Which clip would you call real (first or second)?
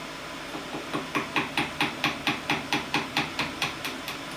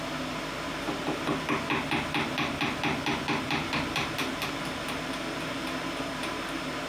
second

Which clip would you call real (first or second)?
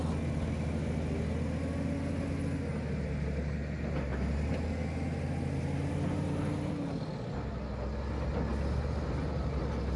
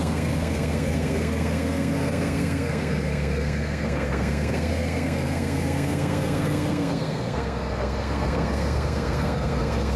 first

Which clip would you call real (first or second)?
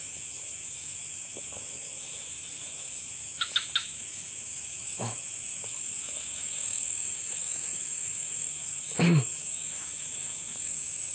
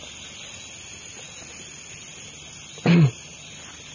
second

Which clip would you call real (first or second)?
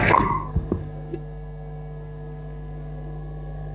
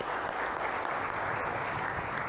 second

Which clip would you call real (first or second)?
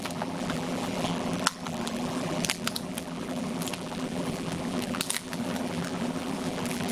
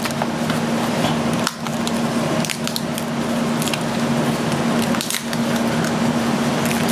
second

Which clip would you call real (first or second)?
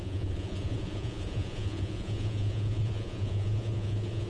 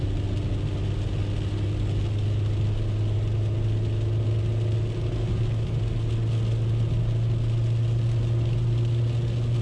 second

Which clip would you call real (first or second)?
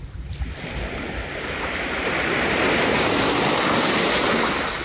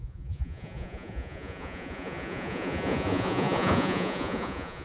first